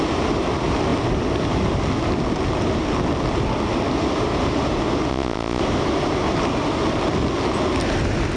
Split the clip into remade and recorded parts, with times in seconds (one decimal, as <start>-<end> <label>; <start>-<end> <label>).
0.0-5.1 recorded; 5.1-5.6 remade; 5.6-8.4 recorded